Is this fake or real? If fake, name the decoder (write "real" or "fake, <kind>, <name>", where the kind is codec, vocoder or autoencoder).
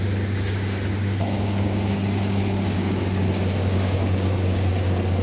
fake, codec, DAC